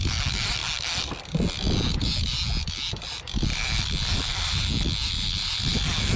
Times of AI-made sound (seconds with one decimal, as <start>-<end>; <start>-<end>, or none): none